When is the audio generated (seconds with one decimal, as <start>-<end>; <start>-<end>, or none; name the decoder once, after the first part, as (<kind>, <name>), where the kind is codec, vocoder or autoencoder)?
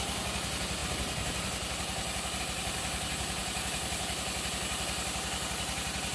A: none